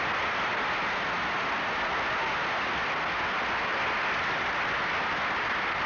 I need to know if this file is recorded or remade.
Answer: recorded